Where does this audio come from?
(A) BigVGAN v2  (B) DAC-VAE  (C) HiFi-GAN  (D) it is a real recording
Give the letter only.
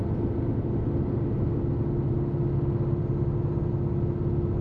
D